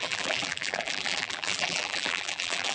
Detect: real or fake fake